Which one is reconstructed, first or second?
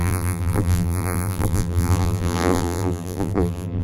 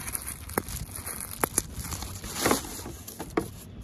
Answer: first